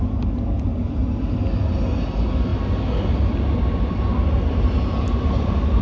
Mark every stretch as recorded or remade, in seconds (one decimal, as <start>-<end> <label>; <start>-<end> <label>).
0.0-5.8 recorded